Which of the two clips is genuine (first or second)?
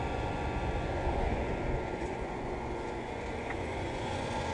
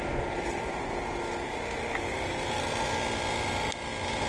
second